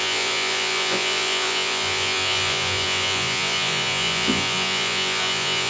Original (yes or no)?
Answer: no